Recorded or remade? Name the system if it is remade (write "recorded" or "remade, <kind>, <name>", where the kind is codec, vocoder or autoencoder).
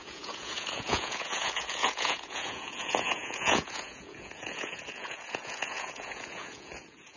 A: remade, vocoder, Vocos